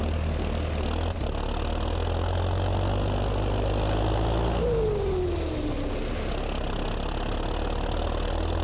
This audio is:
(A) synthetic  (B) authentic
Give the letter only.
B